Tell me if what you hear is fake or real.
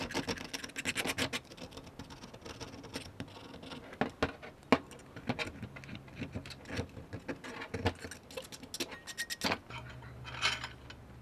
real